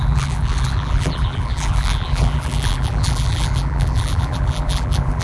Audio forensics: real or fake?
fake